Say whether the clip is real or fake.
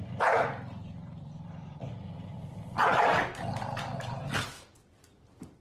real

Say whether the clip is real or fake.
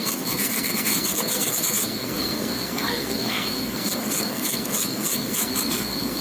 fake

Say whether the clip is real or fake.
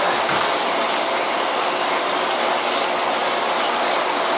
real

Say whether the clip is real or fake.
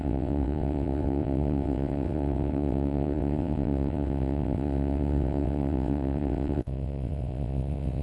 fake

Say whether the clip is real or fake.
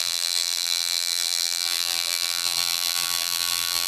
fake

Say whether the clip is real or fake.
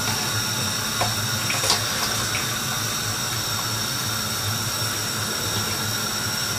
real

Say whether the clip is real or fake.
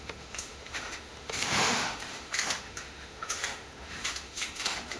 fake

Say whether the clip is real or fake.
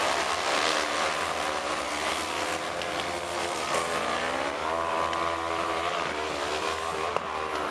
real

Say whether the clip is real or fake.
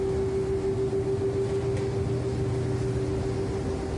real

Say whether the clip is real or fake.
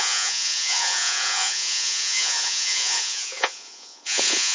fake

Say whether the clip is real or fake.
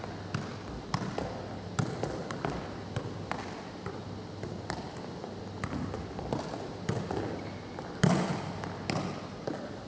real